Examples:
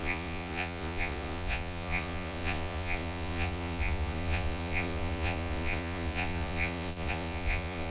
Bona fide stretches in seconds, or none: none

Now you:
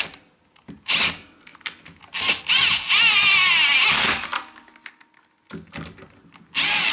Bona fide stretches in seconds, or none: 0.0-6.9

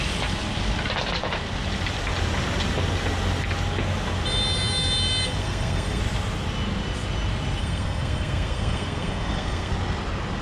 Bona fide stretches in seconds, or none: 0.0-5.4; 6.0-7.6; 9.7-10.4

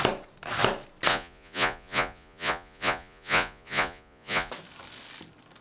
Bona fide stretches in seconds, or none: 0.0-1.1; 4.5-5.6

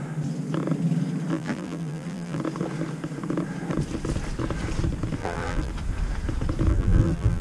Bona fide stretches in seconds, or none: 0.0-1.3; 2.4-5.2; 5.7-6.7